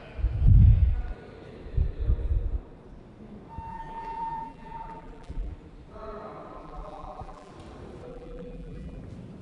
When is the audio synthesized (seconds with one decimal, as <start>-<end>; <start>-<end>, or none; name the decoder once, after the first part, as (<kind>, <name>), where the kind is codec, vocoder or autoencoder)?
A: 3.7-5.5 (vocoder, BigVGAN v2); 6.6-7.5; 8.1-9.0